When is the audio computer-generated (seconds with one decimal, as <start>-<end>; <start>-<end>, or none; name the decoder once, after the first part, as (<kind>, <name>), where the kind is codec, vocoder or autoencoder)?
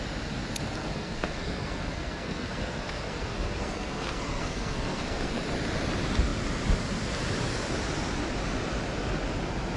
0.8-5.4 (codec, SNAC)